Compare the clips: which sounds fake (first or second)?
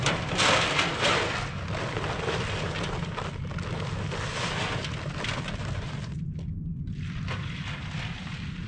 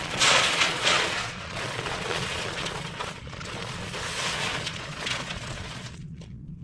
second